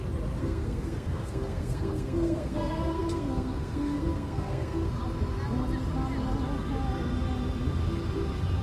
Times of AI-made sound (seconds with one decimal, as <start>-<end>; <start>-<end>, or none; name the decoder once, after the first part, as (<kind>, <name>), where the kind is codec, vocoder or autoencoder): 0.4-4.9 (codec, SNAC)